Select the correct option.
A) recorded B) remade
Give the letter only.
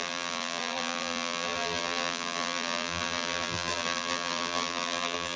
B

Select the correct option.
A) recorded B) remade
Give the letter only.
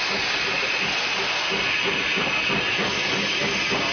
A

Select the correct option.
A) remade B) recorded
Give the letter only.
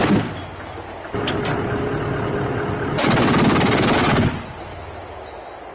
B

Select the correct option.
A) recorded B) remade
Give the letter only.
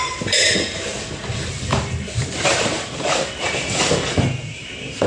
B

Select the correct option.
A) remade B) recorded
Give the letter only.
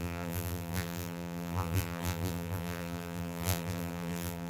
A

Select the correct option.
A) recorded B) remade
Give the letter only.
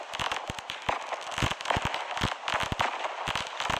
A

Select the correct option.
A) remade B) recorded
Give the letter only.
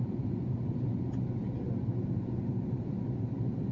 A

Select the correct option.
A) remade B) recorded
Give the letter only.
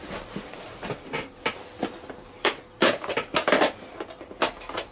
A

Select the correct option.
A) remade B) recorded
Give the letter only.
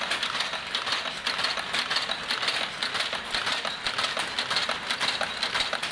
B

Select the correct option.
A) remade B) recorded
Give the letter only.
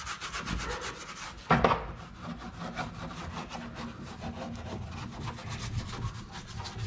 B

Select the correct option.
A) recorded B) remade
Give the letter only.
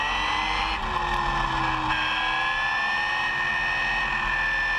A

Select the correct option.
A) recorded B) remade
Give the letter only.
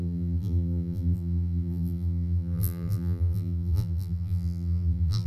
B